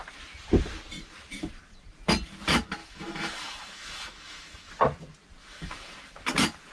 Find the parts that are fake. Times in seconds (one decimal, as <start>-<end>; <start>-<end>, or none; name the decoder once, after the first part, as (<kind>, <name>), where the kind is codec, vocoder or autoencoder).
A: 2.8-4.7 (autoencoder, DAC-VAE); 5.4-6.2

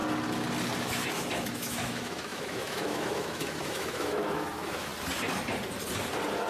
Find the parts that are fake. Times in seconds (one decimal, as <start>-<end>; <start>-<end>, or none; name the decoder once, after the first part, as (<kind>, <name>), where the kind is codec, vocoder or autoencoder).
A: 0.8-4.9 (autoencoder, DAC-VAE)

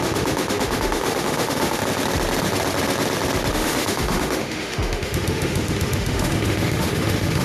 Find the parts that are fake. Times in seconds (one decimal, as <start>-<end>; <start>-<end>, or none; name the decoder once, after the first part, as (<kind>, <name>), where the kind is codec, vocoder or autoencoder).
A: 0.0-1.8 (autoencoder, DAC-VAE); 3.5-7.4